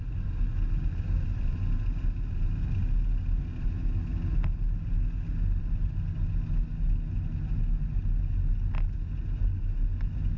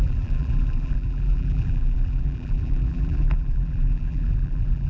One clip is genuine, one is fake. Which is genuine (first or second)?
first